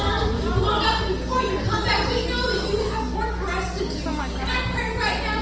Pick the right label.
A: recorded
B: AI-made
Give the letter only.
A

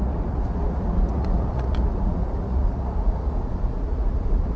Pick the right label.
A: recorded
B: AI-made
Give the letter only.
B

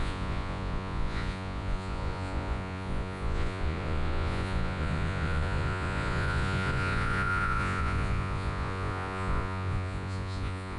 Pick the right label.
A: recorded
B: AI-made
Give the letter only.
B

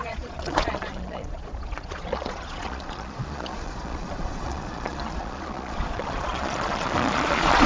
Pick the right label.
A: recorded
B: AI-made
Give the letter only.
B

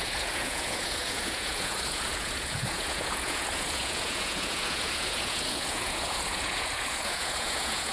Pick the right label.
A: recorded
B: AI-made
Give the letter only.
B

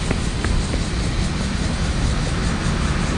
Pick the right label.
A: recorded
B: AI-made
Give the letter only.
A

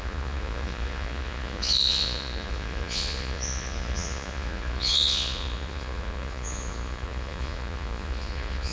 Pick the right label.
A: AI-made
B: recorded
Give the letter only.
A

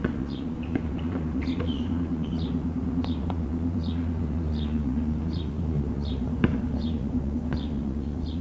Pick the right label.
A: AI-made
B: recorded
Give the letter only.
A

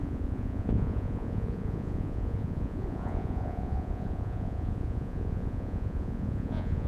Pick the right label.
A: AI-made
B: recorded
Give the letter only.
A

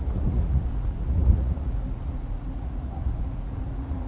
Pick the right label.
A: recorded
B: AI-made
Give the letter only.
B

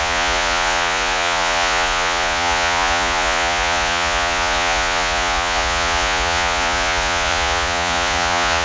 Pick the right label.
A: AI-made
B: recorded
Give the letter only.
A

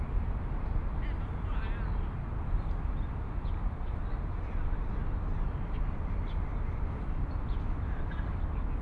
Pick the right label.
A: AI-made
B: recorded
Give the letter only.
B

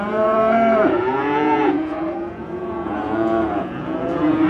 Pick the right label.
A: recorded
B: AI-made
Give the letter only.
B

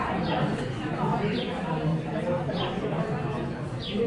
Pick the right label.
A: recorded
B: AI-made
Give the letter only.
A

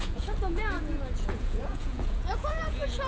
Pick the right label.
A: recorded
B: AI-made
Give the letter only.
B